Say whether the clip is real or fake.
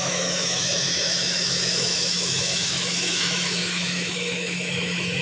fake